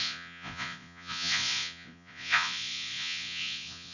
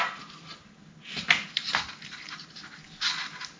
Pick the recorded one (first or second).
second